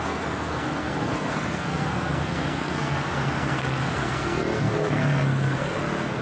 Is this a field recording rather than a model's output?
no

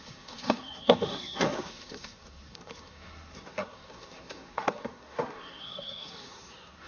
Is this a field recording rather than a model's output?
no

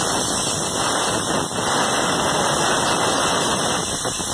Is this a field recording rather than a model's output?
yes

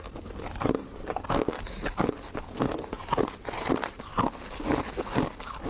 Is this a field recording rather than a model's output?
yes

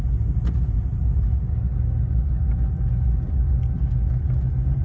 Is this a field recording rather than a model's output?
yes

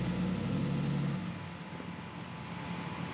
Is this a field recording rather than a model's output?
yes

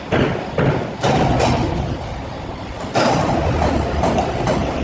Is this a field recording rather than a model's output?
yes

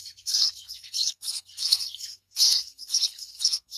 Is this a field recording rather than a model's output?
no